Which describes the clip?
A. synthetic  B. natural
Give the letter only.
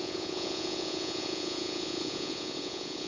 A